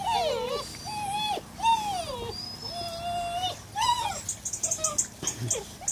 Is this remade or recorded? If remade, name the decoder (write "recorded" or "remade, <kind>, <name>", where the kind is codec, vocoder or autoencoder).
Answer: recorded